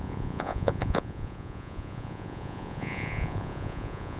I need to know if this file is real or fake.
fake